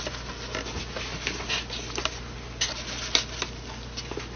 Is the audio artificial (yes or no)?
no